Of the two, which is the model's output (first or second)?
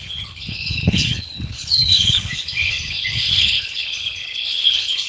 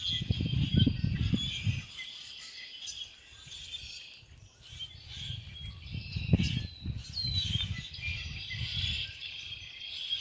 first